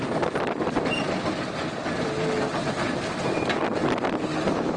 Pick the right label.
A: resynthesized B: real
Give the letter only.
B